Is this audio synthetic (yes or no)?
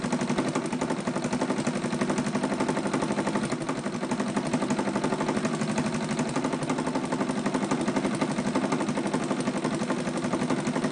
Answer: no